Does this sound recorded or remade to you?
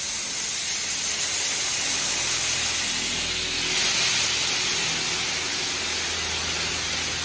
recorded